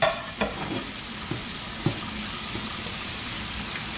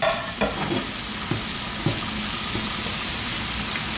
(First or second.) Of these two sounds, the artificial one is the first